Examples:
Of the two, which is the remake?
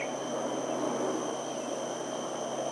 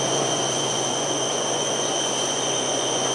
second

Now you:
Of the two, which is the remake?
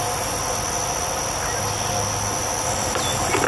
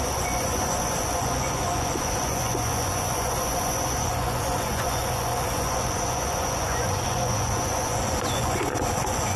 second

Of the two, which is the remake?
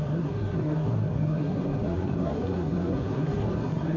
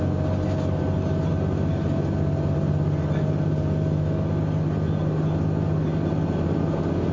first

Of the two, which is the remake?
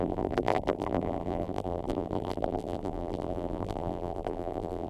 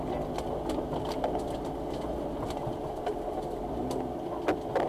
first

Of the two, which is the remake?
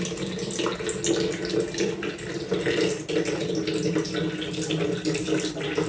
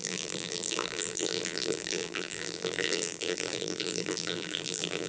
second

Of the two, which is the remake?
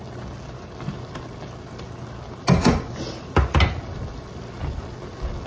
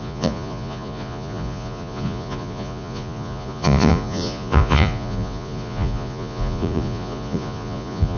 second